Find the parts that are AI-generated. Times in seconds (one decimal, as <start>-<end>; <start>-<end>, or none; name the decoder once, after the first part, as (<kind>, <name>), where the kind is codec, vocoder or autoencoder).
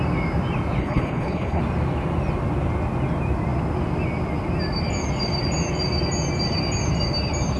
0.8-1.6 (codec, HILCodec)